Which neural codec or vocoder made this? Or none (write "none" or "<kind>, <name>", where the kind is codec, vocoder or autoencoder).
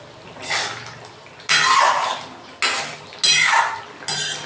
none